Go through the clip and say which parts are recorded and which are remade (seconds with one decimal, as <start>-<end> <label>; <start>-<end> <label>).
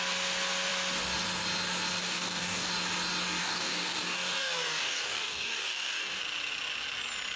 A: 0.0-2.0 recorded; 2.0-2.7 remade; 2.7-3.4 recorded; 3.4-6.2 remade; 6.2-7.4 recorded